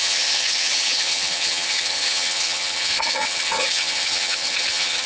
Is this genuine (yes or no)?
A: no